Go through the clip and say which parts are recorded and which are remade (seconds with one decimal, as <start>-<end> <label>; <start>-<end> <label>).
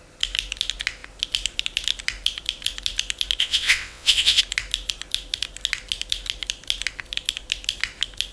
0.0-3.4 recorded; 3.4-4.4 remade; 4.4-8.3 recorded